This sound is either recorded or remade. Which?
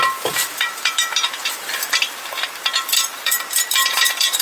remade